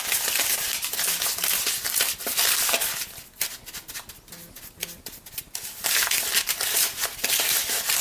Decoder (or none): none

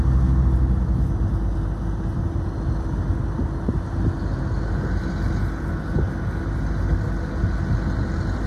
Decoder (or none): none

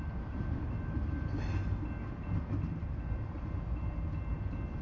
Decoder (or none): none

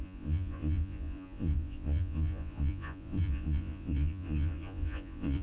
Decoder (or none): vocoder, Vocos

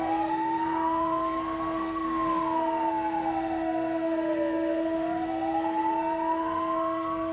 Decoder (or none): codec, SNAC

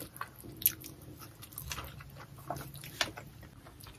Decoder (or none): none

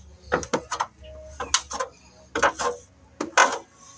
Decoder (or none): none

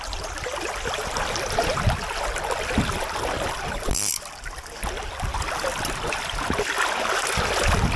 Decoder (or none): none